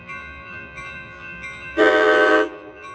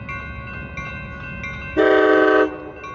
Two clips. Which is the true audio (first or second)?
second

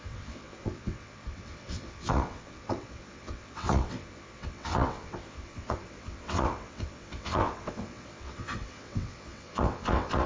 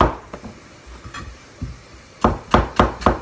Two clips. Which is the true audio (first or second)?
second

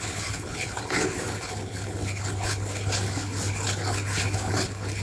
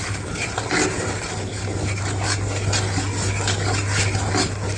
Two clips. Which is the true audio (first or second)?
second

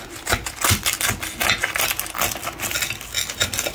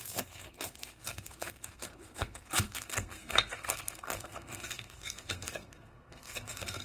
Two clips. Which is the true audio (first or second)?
first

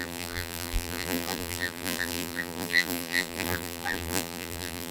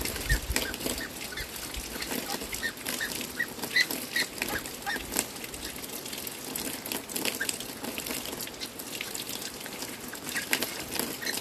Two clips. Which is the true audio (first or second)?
second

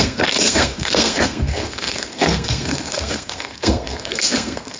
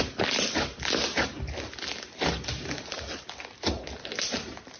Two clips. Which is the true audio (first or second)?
second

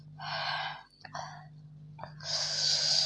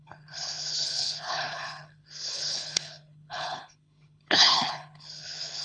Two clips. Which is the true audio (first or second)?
first